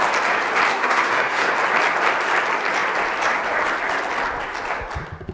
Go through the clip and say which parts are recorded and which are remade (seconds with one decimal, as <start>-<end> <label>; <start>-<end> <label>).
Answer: 0.0-0.7 recorded; 0.7-1.5 remade; 1.5-5.3 recorded